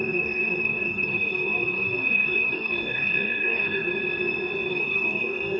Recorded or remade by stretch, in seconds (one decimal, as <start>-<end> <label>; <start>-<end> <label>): 0.0-3.9 remade; 3.9-4.7 recorded; 4.7-5.6 remade